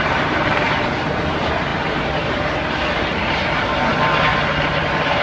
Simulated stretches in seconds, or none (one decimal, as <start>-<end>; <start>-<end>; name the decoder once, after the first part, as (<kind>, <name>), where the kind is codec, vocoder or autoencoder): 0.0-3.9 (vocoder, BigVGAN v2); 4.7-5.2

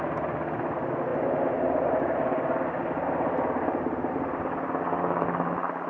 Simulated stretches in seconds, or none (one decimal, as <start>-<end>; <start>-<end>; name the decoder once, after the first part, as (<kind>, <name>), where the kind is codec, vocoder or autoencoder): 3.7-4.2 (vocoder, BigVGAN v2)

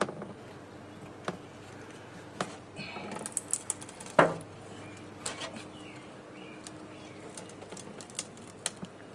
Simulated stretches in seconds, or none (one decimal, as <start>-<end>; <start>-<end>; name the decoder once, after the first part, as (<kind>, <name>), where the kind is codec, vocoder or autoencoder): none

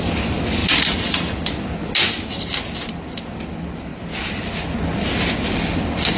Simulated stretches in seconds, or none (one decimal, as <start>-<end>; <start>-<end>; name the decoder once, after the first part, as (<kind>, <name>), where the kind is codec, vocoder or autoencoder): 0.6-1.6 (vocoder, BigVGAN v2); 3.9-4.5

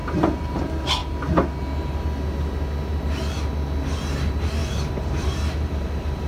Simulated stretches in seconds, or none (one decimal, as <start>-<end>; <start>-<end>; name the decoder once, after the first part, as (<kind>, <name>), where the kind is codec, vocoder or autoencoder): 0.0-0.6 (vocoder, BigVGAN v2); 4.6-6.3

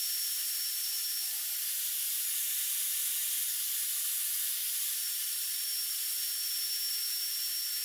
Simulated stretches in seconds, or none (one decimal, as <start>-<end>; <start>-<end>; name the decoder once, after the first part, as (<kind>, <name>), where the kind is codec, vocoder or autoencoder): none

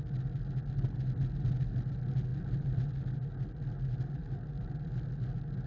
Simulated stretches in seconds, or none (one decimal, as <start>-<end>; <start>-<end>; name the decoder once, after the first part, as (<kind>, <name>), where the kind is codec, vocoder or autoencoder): 2.3-2.8 (vocoder, BigVGAN v2); 4.2-4.7

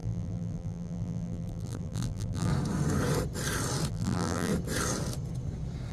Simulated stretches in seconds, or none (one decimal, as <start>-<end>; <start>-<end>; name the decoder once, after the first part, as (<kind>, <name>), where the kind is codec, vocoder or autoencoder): 0.0-2.5 (vocoder, BigVGAN v2); 3.9-4.5